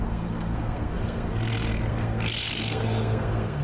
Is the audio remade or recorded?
remade